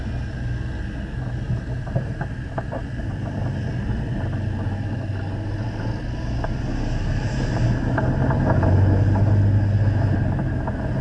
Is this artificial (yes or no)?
no